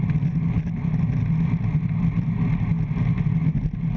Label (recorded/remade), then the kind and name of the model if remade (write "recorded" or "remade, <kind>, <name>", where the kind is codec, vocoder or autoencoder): recorded